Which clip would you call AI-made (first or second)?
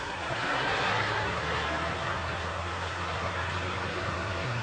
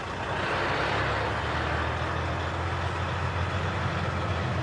first